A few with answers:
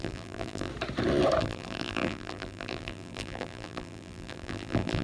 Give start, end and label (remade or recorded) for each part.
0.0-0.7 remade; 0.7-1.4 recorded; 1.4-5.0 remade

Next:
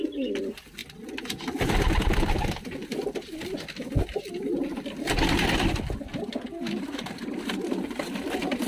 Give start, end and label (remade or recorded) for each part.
0.0-8.7 recorded

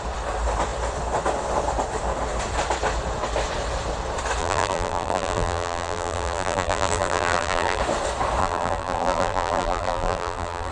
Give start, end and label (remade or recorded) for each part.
0.0-4.4 recorded; 4.4-7.8 remade; 7.8-8.4 recorded; 8.4-10.7 remade

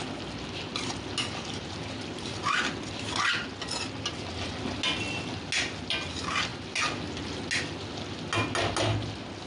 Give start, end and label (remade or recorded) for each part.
0.0-9.5 recorded

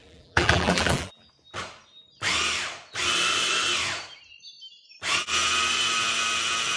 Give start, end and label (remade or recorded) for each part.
0.0-1.3 remade; 1.3-6.8 recorded